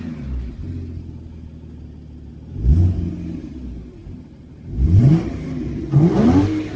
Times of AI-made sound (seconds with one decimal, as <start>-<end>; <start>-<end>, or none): 0.0-0.6; 3.1-6.8